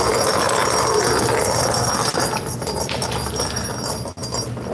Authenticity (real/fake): real